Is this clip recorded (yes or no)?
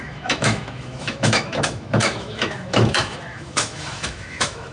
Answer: no